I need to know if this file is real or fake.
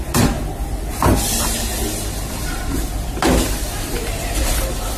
real